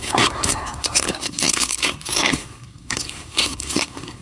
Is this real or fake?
fake